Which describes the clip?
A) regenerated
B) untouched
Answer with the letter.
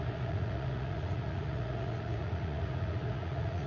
A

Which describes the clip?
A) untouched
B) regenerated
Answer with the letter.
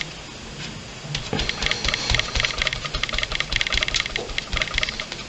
A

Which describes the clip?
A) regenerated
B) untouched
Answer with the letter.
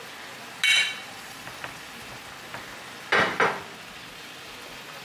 B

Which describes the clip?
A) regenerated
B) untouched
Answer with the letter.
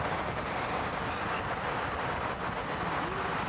B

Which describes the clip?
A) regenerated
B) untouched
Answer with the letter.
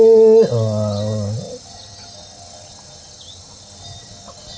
B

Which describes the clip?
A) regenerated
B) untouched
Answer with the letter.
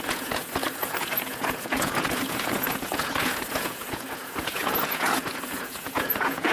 A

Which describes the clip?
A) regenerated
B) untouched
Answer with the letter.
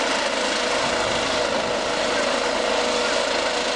B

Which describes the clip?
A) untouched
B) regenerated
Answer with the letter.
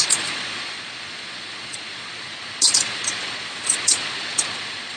B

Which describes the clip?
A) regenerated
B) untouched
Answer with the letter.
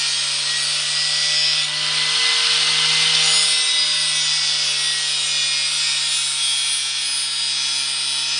B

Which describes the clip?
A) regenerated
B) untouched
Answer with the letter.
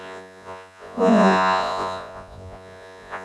A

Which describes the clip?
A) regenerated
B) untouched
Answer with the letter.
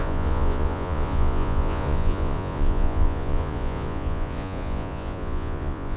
A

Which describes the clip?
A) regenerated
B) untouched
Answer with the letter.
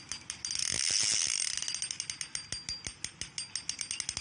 B